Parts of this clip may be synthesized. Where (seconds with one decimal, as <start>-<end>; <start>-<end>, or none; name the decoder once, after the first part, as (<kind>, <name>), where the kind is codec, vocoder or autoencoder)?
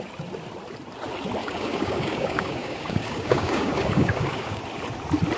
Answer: 1.4-4.6 (codec, DAC)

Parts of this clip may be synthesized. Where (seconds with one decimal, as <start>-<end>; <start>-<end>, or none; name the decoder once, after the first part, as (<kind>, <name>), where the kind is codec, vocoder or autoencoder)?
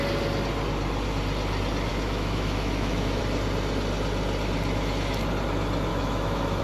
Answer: 1.9-3.2 (autoencoder, DAC-VAE); 5.9-6.6